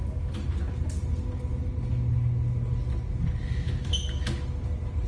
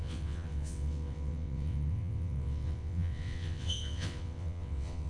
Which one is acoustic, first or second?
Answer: first